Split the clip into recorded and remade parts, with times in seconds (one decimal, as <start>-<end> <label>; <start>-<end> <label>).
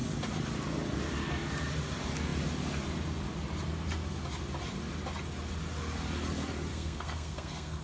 0.0-6.7 recorded; 6.7-7.8 remade